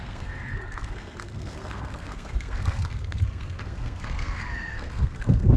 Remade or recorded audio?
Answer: remade